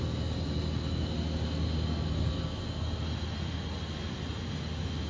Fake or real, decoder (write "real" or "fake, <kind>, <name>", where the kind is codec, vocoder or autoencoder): real